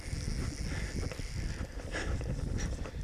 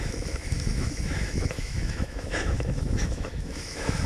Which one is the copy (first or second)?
second